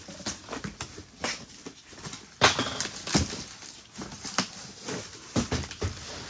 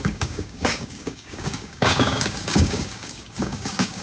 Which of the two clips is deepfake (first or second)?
second